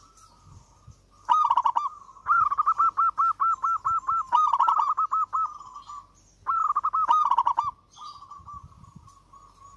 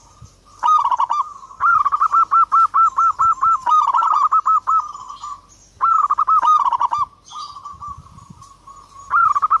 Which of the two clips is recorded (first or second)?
first